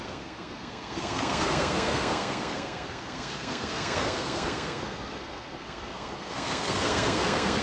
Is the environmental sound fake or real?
fake